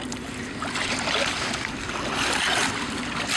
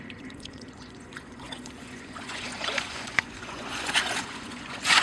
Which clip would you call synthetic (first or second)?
second